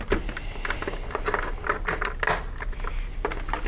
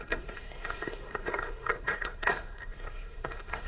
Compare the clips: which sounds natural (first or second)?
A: first